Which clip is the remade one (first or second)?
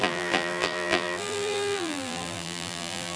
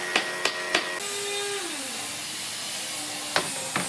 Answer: first